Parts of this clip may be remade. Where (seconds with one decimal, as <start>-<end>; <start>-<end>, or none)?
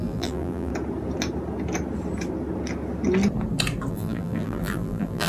0.0-0.7; 3.9-5.3